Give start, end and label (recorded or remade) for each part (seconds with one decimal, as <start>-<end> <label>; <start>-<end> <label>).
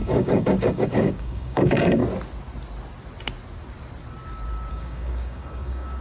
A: 0.0-2.0 remade; 2.0-4.7 recorded; 4.7-6.0 remade